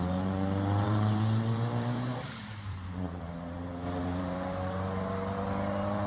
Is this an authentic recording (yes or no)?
no